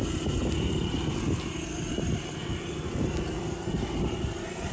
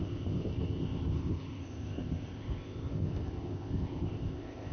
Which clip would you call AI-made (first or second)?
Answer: second